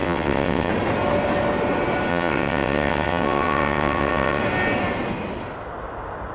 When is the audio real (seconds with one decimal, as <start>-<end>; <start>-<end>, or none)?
0.7-2.1; 4.4-6.3

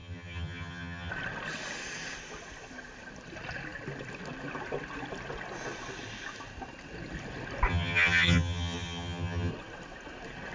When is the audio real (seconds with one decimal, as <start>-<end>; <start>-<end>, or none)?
1.1-7.7; 9.5-10.5